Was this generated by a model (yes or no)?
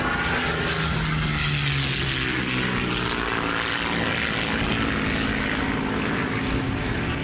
no